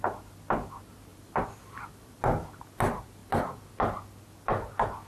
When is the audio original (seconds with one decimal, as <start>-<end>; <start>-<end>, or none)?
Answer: 0.0-1.1; 2.2-3.2; 3.7-5.1